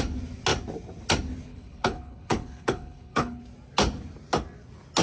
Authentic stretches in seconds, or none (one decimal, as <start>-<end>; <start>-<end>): 0.0-1.5; 3.4-5.0